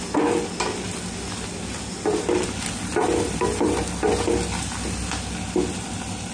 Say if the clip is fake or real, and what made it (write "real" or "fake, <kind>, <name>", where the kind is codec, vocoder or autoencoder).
real